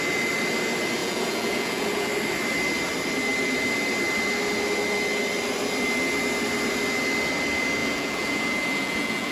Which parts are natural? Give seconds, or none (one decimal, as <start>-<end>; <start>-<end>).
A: 0.0-1.0; 2.1-7.8